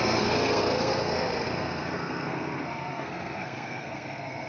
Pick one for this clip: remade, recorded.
remade